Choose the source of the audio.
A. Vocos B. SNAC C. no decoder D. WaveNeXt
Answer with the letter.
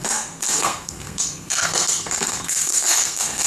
B